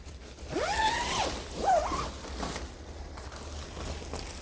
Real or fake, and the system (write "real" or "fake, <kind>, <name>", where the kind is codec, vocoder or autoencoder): real